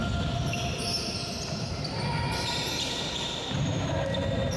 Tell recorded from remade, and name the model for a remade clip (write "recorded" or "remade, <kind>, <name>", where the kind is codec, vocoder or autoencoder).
recorded